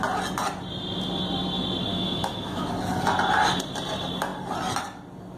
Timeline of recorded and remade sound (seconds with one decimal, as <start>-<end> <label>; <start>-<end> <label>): 0.0-1.9 recorded; 1.9-2.7 remade; 2.7-5.4 recorded